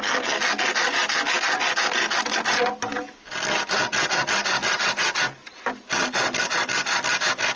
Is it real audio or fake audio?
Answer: real